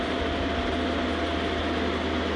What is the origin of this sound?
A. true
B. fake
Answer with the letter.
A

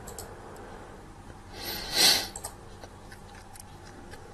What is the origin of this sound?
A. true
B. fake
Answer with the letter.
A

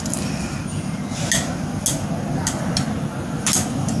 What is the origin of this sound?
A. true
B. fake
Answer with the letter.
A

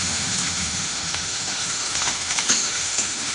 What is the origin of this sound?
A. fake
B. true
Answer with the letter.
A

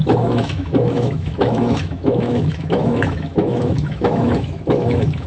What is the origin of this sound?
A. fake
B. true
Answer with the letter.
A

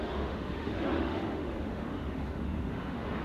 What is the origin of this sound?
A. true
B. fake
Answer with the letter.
B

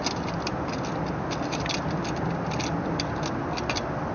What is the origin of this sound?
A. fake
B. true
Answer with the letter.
B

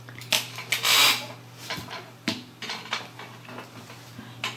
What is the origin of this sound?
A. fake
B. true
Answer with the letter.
B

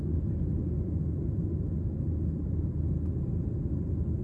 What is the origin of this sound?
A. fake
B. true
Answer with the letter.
B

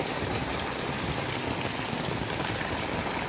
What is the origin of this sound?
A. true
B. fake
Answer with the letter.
A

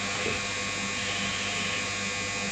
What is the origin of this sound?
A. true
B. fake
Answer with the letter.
A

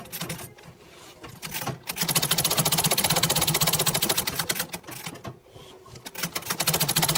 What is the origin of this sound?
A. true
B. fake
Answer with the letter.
A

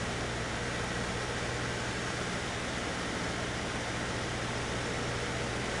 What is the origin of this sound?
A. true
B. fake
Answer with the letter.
A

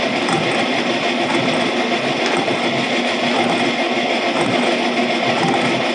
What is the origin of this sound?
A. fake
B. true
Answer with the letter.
B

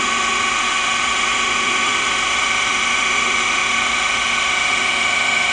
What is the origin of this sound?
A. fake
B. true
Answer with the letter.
A